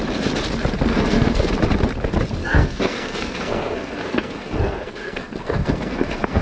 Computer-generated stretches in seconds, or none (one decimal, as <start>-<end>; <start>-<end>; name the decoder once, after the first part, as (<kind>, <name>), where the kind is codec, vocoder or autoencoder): 0.9-1.5 (codec, SNAC); 2.4-6.4